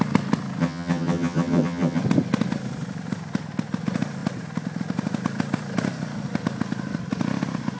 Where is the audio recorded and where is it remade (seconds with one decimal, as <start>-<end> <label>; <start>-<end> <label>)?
0.0-0.6 recorded; 0.6-2.0 remade; 2.0-7.8 recorded